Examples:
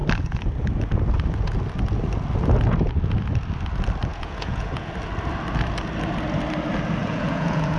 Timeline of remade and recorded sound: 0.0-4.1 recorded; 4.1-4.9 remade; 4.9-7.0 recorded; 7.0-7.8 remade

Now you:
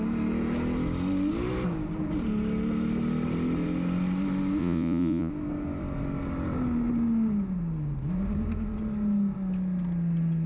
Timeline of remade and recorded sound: 0.0-4.6 recorded; 4.6-5.3 remade; 5.3-10.5 recorded

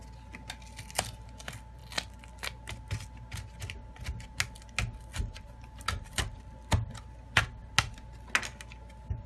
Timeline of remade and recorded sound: 0.0-9.3 recorded

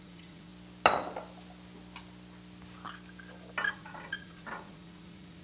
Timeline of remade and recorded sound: 0.0-0.5 remade; 0.5-3.7 recorded; 3.7-5.4 remade

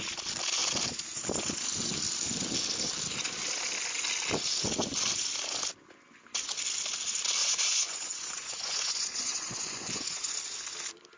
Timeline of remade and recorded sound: 0.0-7.4 recorded; 7.4-10.3 remade; 10.3-11.2 recorded